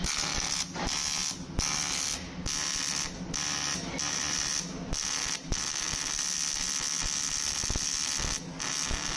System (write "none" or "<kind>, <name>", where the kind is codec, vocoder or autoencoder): none